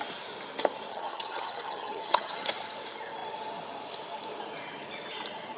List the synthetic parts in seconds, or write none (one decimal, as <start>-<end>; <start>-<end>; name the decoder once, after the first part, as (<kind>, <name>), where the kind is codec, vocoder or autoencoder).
0.9-2.5 (vocoder, HiFi-GAN)